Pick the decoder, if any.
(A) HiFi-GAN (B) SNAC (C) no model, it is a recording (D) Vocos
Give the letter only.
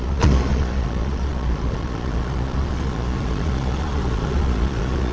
D